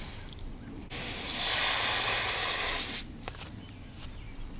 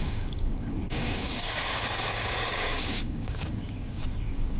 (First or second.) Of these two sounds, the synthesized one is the second